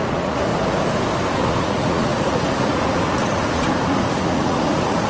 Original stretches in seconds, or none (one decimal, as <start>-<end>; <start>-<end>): 0.5-1.2